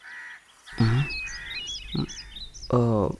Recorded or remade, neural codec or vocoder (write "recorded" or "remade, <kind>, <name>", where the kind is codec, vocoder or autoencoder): recorded